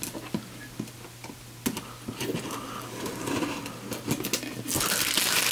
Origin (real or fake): real